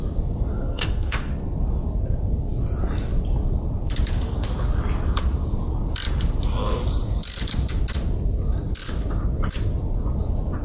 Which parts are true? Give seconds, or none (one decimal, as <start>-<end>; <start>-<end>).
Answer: 0.0-0.5; 1.3-10.6

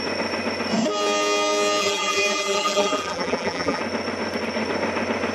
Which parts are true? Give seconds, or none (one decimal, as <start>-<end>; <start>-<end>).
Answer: 0.0-1.8; 3.8-5.3

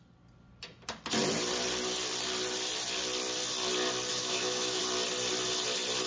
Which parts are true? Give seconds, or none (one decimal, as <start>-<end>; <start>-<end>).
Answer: 0.0-4.1; 4.8-6.1

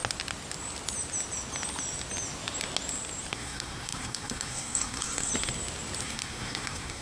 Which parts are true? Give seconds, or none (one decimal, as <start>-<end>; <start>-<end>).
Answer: 0.0-3.3; 5.3-6.0